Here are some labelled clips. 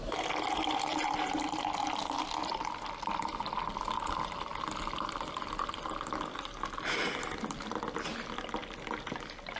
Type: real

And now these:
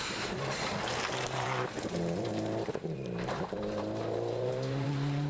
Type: fake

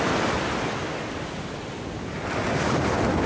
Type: real